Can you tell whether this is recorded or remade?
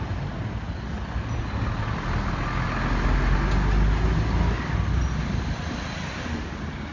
recorded